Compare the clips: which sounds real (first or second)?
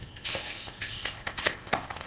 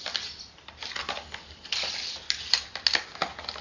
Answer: second